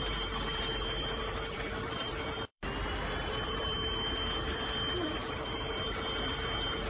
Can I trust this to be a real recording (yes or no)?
no